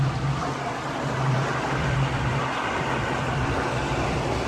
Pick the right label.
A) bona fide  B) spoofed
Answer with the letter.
A